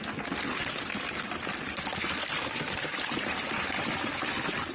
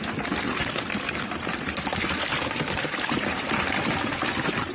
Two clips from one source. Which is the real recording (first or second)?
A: first